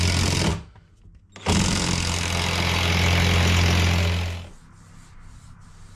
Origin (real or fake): real